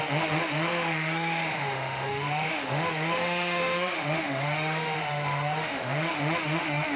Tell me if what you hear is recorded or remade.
remade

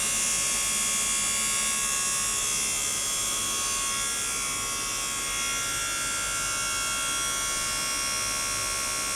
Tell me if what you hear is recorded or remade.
recorded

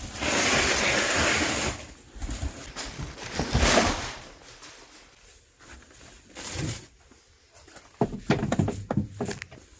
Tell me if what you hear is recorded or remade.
recorded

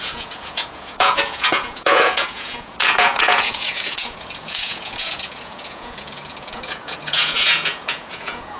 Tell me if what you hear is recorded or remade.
remade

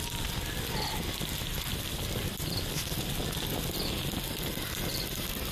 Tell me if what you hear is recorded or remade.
recorded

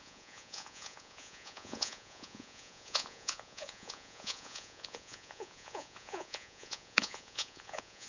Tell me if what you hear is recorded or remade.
remade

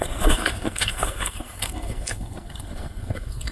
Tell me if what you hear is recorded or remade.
remade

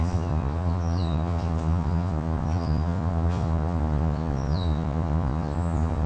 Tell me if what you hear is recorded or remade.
remade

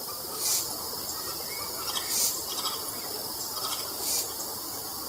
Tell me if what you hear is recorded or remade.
recorded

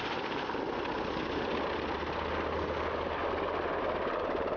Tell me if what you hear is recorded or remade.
recorded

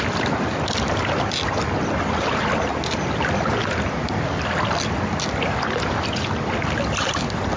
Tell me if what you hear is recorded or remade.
recorded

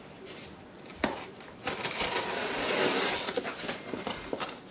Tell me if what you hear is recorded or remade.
recorded